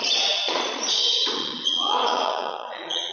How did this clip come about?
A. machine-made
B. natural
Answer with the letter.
A